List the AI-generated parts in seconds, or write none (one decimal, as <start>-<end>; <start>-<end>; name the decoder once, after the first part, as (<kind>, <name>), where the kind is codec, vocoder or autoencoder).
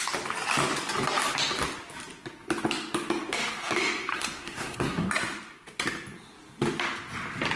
4.1-5.1 (codec, SNAC)